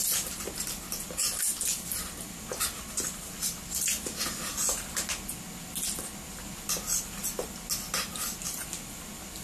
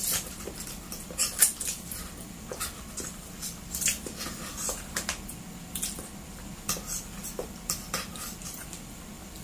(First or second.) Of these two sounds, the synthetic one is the second